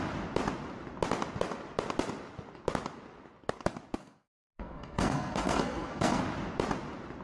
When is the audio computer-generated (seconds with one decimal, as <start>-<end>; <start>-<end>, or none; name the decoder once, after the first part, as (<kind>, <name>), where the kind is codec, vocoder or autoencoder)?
4.0-6.2 (codec, SNAC)